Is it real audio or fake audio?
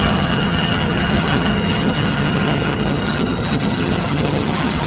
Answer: fake